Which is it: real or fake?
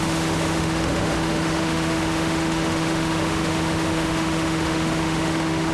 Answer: fake